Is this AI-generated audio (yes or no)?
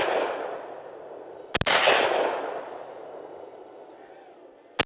no